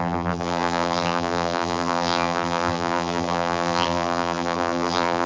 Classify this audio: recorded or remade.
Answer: remade